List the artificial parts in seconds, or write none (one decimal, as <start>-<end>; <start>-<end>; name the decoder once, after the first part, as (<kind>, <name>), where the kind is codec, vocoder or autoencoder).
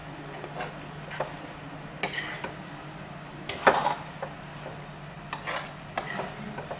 none